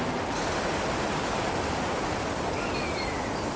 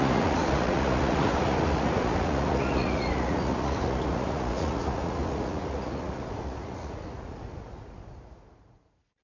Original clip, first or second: first